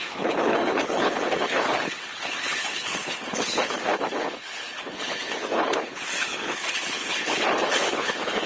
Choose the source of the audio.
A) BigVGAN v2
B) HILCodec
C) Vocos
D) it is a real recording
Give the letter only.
B